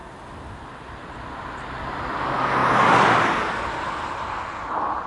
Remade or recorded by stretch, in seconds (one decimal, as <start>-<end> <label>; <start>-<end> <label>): 0.0-5.1 recorded